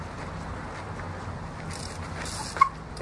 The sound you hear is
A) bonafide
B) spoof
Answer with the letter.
A